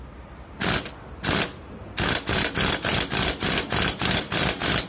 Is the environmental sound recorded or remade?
recorded